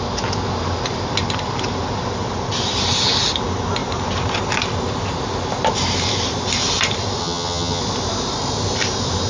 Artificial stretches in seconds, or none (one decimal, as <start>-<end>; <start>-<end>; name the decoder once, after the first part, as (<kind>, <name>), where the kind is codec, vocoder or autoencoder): 7.2-7.8 (vocoder, HiFi-GAN)